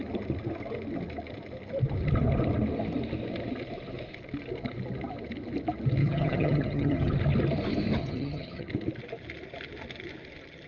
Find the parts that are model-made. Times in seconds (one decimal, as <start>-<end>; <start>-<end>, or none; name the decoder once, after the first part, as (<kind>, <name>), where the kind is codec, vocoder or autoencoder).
6.0-7.1 (vocoder, HiFi-GAN); 8.0-8.7